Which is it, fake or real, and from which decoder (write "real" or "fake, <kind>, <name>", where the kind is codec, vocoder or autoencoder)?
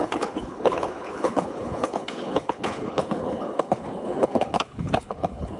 fake, codec, HILCodec